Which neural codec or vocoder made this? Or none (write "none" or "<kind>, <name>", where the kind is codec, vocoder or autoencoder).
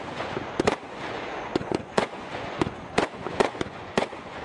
vocoder, Vocos